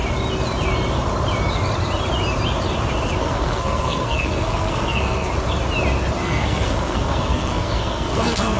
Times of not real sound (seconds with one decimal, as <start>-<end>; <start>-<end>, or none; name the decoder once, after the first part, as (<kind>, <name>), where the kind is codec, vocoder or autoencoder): 3.2-5.3 (codec, SNAC); 6.2-8.6